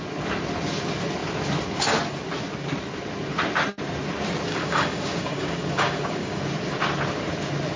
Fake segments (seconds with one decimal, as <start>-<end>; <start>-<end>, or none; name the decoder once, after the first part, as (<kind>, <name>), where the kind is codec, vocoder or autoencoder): 4.5-6.4 (codec, DAC)